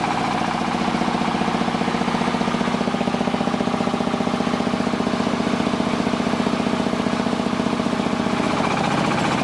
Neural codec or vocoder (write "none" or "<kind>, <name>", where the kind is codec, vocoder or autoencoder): none